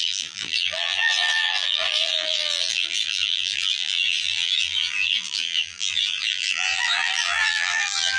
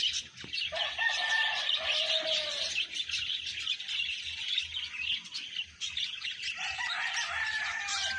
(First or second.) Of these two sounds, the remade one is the first